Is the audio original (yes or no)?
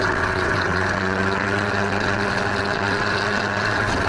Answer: no